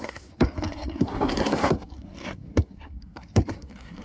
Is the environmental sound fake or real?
fake